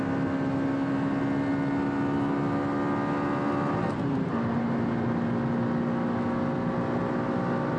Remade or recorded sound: recorded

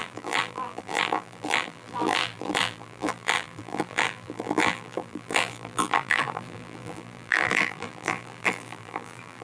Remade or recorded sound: remade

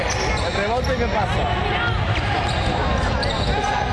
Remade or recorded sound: recorded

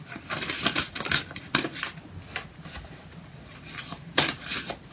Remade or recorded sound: recorded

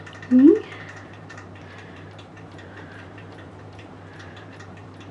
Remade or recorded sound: remade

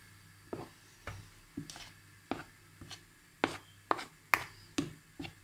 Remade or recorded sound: recorded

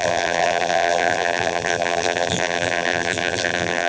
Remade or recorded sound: remade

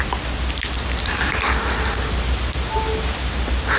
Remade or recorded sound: recorded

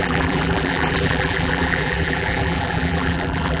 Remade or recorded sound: remade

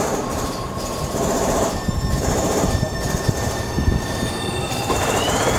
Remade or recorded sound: remade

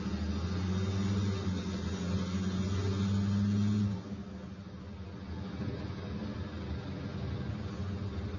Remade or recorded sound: recorded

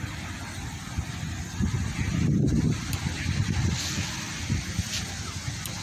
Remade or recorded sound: remade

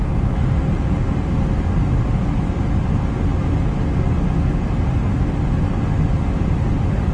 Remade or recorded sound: recorded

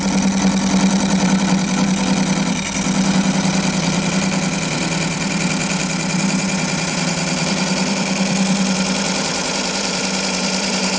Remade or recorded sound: remade